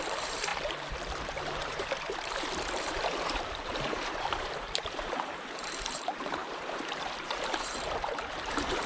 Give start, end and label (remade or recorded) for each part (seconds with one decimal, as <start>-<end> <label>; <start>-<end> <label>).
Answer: 0.0-8.9 remade

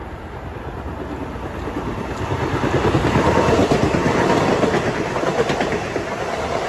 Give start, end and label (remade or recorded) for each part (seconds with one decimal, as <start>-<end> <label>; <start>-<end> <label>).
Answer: 0.0-2.9 remade; 2.9-5.3 recorded; 5.3-6.7 remade

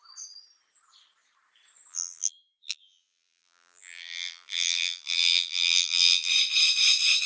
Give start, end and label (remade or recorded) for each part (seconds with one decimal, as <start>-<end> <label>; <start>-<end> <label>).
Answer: 0.0-1.9 recorded; 1.9-6.3 remade; 6.3-7.3 recorded

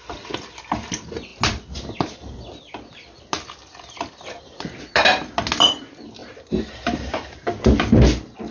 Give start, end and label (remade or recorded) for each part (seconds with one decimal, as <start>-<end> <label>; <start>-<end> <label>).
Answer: 0.0-6.2 recorded; 6.2-7.6 remade; 7.6-8.5 recorded

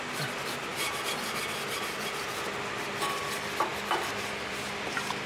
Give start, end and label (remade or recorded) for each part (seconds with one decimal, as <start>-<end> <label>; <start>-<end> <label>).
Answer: 0.0-3.7 recorded; 3.7-5.3 remade

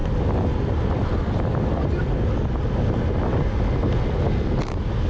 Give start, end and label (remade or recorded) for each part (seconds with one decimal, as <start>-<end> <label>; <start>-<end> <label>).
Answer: 0.0-5.1 recorded